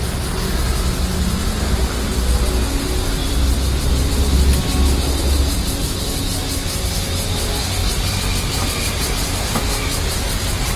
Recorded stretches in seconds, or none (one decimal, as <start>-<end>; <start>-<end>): 0.0-3.2; 4.2-7.8; 9.1-10.8